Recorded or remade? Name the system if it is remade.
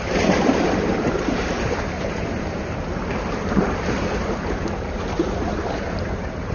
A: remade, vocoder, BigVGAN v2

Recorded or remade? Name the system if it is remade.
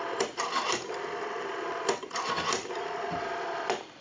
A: remade, vocoder, BigVGAN v2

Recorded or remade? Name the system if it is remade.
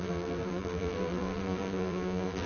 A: remade, vocoder, BigVGAN v2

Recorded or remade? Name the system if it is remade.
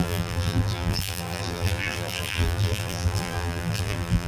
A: remade, vocoder, BigVGAN v2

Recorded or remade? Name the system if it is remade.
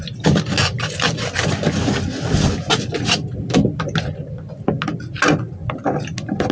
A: recorded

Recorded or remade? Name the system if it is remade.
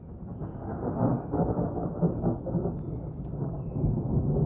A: recorded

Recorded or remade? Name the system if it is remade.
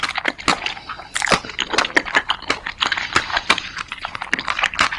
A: recorded